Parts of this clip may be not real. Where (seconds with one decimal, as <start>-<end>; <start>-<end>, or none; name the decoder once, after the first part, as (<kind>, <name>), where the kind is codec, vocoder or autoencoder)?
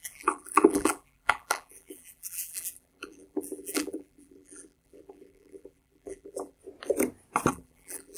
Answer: 0.0-6.6 (vocoder, BigVGAN v2); 7.5-8.2